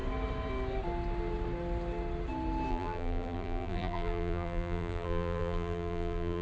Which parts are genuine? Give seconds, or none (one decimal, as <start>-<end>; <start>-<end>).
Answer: 0.0-2.7